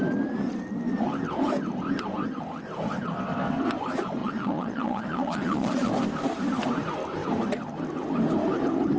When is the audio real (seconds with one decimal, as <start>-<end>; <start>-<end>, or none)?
0.0-4.2; 5.9-9.0